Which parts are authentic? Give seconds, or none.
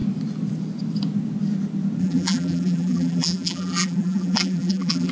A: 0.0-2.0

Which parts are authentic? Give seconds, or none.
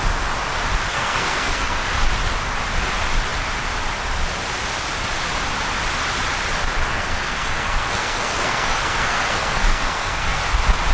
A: 0.0-0.9; 1.8-6.9; 10.4-10.9